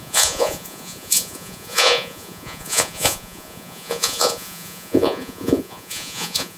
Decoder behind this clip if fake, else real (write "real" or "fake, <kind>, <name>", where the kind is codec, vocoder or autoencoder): fake, vocoder, Vocos